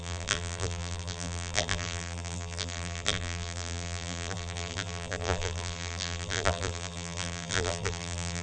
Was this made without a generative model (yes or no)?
no